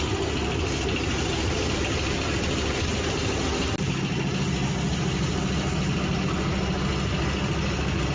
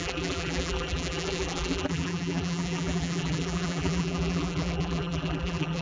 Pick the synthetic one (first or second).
second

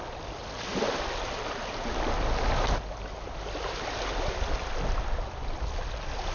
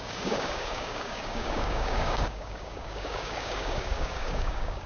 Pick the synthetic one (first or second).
second